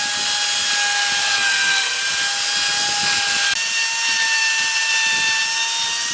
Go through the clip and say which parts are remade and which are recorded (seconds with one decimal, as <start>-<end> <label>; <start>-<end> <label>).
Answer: 0.0-1.2 recorded; 1.2-2.0 remade; 2.0-6.1 recorded